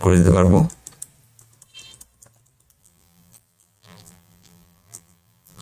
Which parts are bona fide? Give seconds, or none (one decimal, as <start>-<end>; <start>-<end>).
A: 0.6-2.8